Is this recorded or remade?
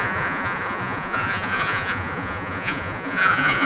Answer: remade